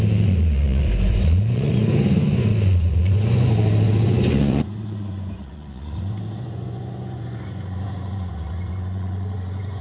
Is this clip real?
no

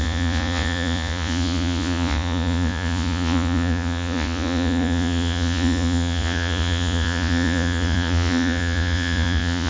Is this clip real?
no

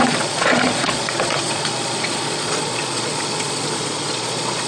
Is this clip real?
no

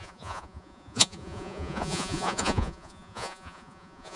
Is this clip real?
no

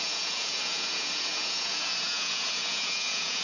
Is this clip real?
no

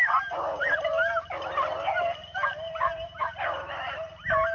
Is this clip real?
yes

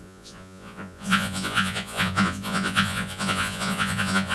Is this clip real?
no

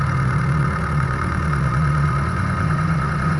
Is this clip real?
no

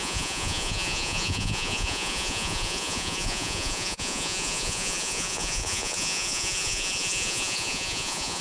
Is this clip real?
no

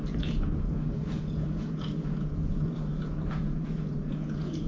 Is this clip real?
no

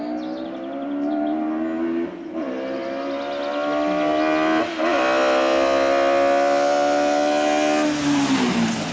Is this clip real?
yes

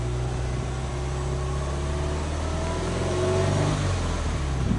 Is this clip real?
yes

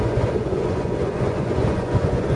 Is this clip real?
no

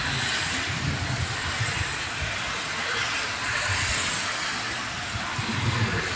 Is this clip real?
yes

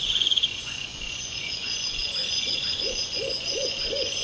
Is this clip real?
no